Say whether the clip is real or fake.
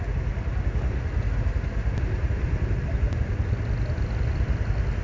real